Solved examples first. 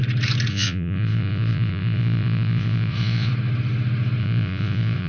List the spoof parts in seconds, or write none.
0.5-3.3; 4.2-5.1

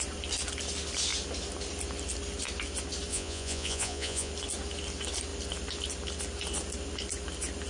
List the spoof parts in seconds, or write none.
3.1-4.3

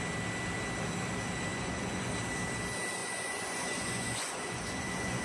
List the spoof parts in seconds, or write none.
1.5-2.1; 3.0-5.2

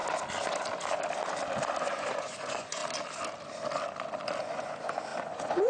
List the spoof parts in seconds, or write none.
1.8-2.8; 4.4-5.7

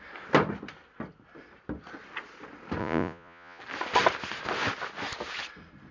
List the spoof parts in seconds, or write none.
2.8-3.6

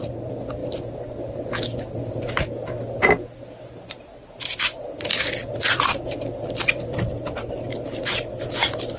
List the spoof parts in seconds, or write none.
none